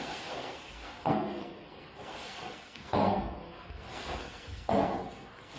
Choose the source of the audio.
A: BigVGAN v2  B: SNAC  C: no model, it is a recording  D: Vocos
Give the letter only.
B